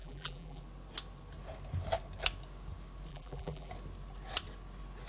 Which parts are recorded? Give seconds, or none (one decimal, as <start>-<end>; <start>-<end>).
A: 0.6-3.1; 3.7-5.1